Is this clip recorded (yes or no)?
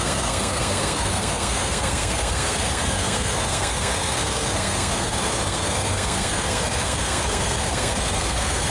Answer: no